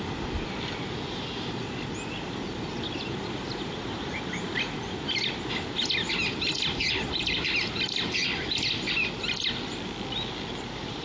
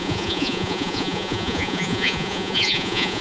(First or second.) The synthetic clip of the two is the second